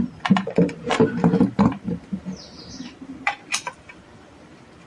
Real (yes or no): no